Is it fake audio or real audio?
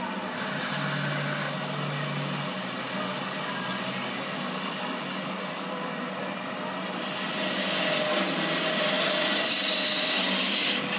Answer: real